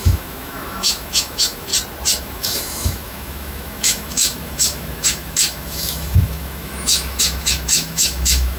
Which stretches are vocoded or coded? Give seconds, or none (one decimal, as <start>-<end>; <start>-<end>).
0.0-1.7; 2.2-8.6